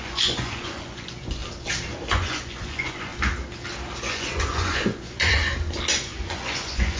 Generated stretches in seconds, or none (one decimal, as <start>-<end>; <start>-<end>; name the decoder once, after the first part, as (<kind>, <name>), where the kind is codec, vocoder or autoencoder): 0.0-1.4 (vocoder, Vocos); 2.1-3.1; 4.1-5.4; 5.9-7.0